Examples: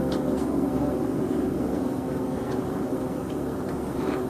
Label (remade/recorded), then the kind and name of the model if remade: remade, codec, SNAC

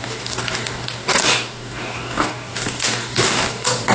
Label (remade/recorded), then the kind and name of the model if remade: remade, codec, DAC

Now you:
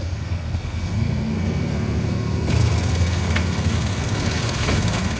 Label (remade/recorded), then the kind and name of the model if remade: remade, codec, SNAC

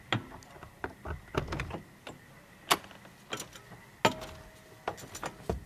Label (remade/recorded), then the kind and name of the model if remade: recorded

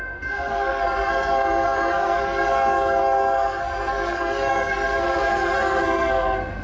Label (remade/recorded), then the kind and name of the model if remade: remade, codec, SNAC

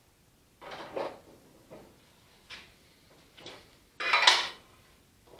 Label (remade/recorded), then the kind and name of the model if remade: recorded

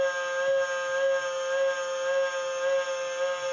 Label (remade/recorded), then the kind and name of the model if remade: recorded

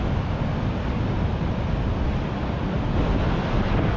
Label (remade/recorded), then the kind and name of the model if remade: recorded